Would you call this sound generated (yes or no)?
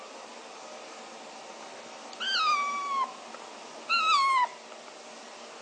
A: no